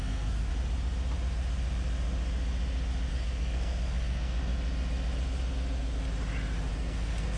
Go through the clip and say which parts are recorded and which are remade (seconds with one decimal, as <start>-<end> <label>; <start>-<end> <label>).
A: 0.0-0.5 remade; 0.5-3.1 recorded; 3.1-4.5 remade; 4.5-6.7 recorded; 6.7-7.4 remade